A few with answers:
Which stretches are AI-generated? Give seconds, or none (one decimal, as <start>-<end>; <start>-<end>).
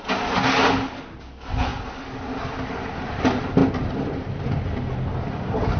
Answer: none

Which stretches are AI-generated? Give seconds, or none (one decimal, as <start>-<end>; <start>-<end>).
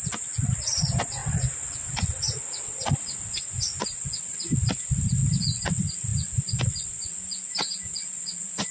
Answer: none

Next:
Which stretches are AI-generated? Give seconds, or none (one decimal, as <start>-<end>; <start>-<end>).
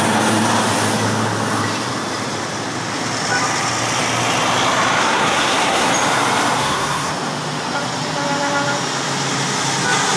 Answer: 5.0-5.9; 6.6-7.1